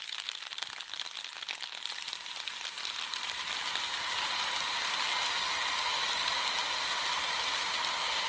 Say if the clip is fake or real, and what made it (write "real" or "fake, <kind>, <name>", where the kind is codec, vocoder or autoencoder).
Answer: real